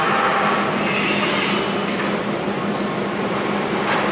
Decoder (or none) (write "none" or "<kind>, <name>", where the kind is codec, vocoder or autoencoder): none